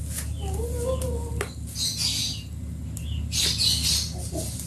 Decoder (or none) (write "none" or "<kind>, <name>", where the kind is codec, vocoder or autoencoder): none